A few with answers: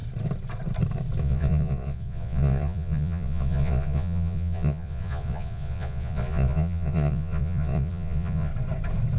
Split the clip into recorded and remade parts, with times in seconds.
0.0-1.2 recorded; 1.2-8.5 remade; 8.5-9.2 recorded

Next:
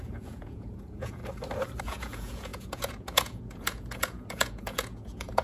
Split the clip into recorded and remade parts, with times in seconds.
0.0-1.2 remade; 1.2-1.8 recorded; 1.8-5.4 remade

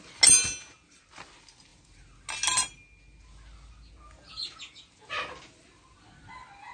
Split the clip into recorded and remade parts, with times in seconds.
0.0-6.7 recorded

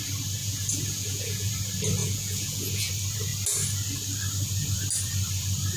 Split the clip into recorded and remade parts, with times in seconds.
0.0-0.4 recorded; 0.4-1.5 remade; 1.5-2.0 recorded; 2.0-2.9 remade; 2.9-5.8 recorded

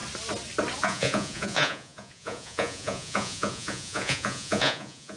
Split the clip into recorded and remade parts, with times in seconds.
0.0-0.8 recorded; 0.8-5.2 remade

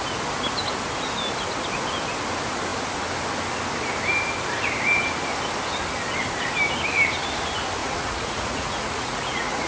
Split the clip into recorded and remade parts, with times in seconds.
0.0-7.8 recorded; 7.8-9.7 remade